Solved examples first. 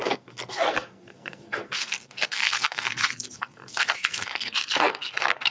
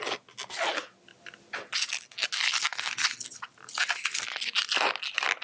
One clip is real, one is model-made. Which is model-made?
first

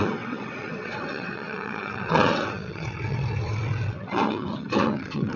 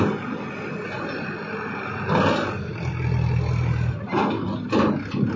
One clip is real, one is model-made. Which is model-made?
first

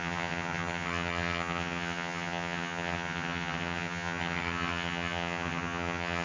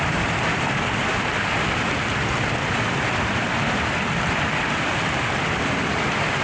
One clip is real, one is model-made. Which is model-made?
first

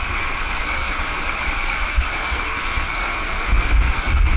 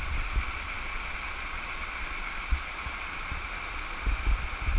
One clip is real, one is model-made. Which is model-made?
first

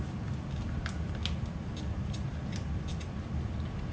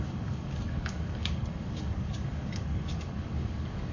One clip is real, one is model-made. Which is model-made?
second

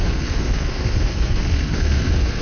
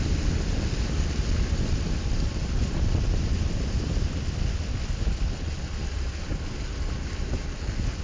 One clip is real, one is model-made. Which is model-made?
first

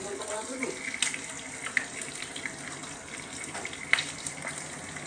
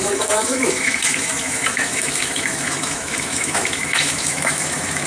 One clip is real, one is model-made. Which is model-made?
second